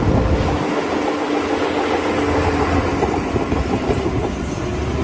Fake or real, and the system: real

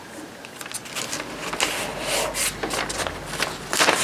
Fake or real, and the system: real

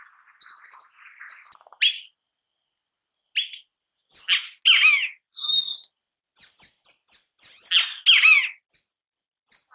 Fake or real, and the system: real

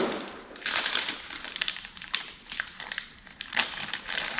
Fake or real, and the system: fake, vocoder, BigVGAN v2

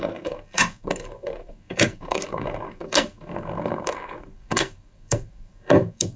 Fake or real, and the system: fake, codec, SNAC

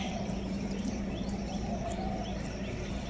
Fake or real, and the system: fake, vocoder, BigVGAN v2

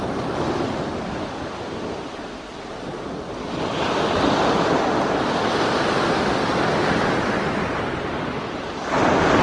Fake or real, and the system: real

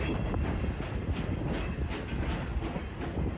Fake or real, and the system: real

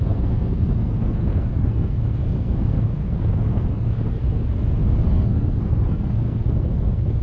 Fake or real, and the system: fake, codec, SNAC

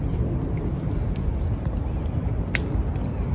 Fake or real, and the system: real